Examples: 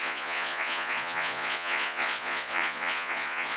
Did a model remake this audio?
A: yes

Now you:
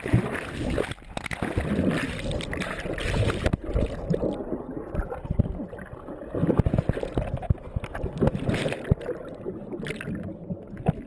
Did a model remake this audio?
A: no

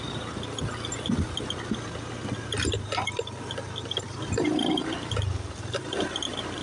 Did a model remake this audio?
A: no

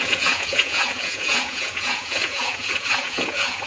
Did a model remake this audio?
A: yes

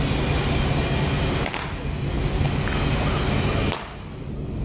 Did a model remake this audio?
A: no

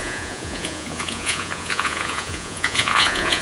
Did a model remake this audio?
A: yes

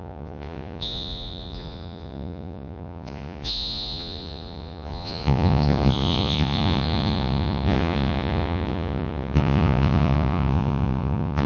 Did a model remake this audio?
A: yes